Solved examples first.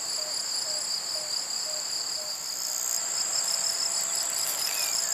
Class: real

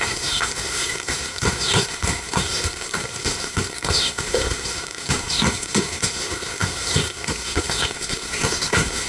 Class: fake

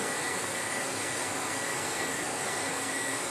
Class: fake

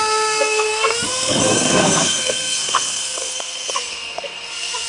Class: fake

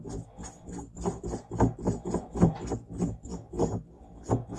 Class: real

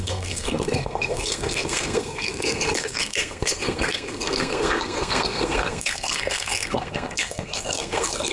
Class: fake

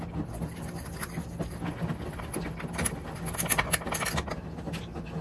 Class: real